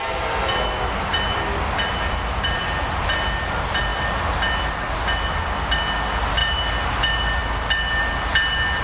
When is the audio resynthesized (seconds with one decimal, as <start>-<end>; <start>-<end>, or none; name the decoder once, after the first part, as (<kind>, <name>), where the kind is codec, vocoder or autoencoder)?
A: none